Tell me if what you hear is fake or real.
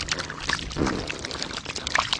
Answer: real